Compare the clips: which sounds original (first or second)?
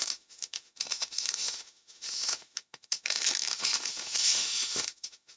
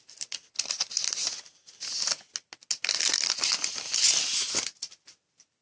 second